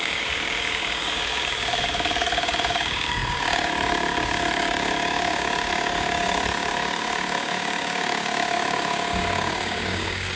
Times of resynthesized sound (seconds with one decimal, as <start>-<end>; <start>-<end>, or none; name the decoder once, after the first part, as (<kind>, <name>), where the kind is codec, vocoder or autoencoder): 0.0-10.4 (codec, DAC)